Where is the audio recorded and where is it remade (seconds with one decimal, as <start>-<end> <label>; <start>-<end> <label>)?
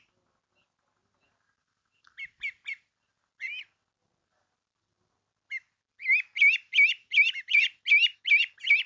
0.0-1.6 recorded; 1.6-4.8 remade; 4.8-7.0 recorded; 7.0-7.6 remade; 7.6-8.9 recorded